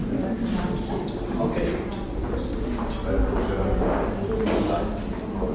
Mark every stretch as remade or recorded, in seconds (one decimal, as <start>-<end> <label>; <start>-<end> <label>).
0.0-5.5 recorded

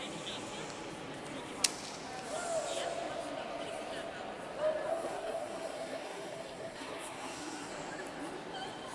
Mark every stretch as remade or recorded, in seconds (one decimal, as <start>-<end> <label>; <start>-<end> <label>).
0.0-4.9 recorded; 4.9-7.7 remade; 7.7-8.9 recorded

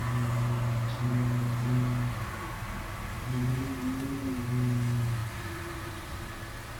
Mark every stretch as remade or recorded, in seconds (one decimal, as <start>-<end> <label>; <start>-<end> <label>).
0.0-5.2 recorded; 5.2-6.1 remade; 6.1-6.8 recorded

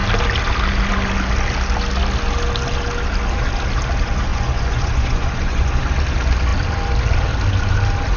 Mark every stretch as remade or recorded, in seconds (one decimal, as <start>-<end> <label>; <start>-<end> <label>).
0.0-4.3 recorded; 4.3-5.8 remade; 5.8-8.2 recorded

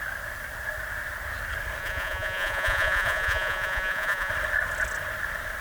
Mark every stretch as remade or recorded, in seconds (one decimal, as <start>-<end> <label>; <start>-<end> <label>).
0.0-1.8 recorded; 1.8-4.3 remade; 4.3-5.6 recorded